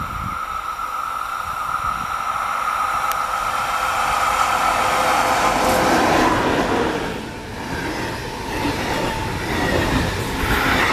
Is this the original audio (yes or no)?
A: yes